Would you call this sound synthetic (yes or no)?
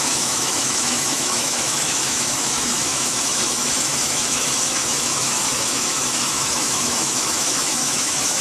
yes